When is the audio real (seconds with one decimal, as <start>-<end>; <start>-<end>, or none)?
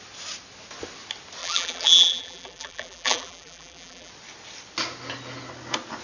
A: 0.0-1.4; 4.1-6.0